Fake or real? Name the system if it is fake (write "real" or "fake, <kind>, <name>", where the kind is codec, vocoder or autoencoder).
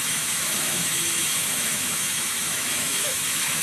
fake, autoencoder, DAC-VAE